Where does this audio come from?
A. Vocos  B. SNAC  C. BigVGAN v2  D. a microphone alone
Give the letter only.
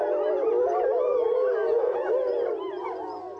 D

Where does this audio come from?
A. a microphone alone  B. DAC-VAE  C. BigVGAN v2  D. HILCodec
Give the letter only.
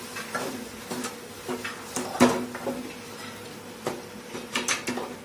A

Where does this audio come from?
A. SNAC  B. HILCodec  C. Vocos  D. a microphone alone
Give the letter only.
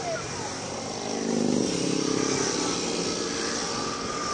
D